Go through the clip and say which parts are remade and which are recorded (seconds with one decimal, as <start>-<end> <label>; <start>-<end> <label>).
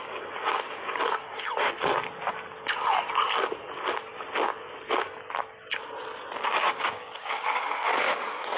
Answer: 0.0-1.9 remade; 1.9-6.5 recorded; 6.5-8.6 remade